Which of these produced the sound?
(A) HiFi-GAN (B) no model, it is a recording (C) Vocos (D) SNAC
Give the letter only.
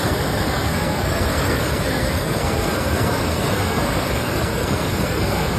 D